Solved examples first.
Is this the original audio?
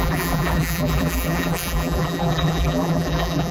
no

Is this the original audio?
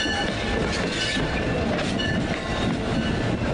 yes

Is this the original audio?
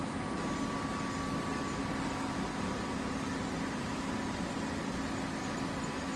yes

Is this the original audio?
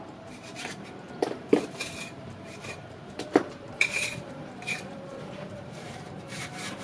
no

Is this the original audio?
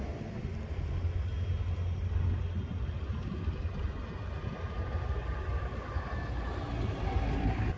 yes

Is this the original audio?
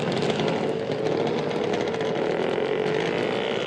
yes